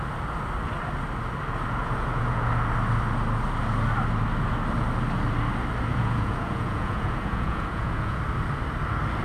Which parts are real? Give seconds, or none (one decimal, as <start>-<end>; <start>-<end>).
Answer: 0.0-1.8; 2.5-5.9; 8.2-9.2